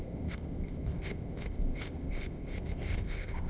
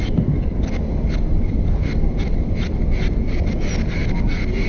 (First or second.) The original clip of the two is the second